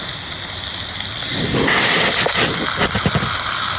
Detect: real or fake real